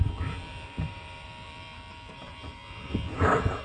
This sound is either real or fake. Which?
fake